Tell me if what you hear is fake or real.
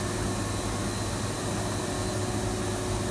real